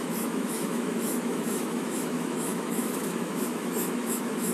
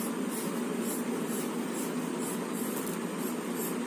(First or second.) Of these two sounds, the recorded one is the second